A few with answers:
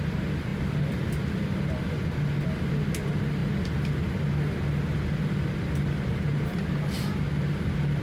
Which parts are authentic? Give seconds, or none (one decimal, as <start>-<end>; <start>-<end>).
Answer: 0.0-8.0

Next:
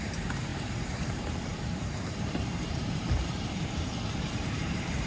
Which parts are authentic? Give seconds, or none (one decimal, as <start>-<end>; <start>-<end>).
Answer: none

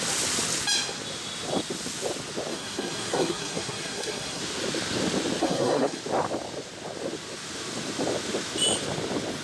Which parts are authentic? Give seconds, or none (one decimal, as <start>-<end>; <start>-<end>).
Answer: 0.0-2.5; 4.4-5.4; 6.0-9.4

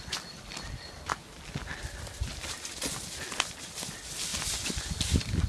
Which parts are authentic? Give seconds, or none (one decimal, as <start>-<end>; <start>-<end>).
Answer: 0.0-5.5

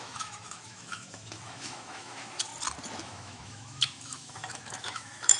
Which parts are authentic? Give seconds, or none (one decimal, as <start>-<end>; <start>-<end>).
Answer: 2.5-3.0

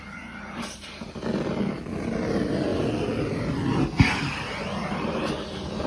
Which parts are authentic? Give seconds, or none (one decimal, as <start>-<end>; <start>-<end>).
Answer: 0.0-5.9